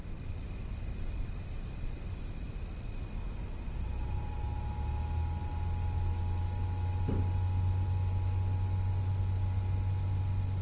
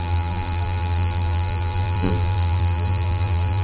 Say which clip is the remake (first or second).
second